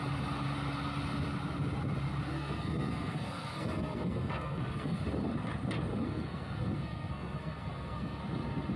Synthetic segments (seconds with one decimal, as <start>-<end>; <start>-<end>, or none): 2.3-5.0; 5.9-8.2